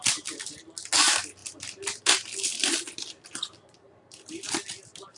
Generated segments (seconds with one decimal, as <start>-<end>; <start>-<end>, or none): none